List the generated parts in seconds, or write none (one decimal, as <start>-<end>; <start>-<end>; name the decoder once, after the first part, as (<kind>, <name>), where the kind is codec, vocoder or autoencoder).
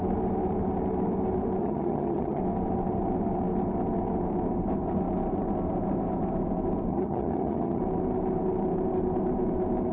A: 1.6-2.4 (vocoder, HiFi-GAN); 6.9-7.8